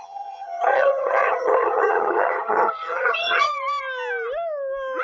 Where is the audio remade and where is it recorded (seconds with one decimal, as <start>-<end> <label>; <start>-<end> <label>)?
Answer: 0.0-3.5 remade; 3.5-5.0 recorded